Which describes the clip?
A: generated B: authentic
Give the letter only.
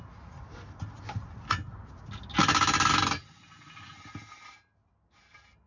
B